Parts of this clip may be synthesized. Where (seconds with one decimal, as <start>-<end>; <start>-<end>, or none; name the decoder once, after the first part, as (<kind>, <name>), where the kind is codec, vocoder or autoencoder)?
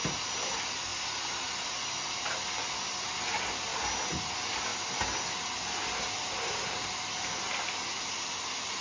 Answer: none